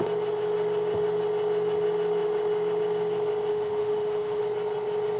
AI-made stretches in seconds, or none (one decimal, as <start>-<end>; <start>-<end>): 3.5-4.4